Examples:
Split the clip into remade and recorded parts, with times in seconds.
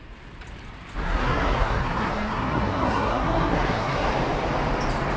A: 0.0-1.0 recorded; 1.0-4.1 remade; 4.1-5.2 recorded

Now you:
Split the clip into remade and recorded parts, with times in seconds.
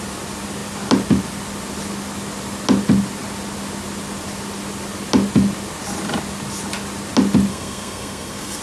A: 0.0-7.5 recorded; 7.5-8.6 remade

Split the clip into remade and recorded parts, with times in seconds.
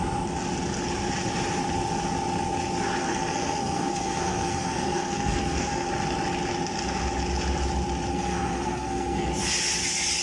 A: 0.0-3.0 recorded; 3.0-5.9 remade; 5.9-8.1 recorded; 8.1-9.3 remade; 9.3-10.2 recorded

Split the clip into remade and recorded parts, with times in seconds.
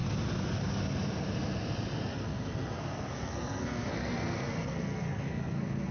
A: 0.0-2.1 recorded; 2.1-5.9 remade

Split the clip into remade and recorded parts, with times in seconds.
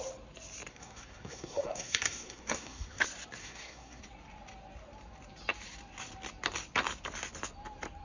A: 0.0-0.7 recorded; 0.7-3.0 remade; 3.0-3.4 recorded; 3.4-4.0 remade; 4.0-8.0 recorded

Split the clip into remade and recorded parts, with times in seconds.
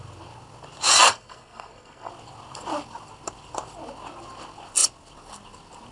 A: 0.0-1.1 recorded; 1.1-2.1 remade; 2.1-5.9 recorded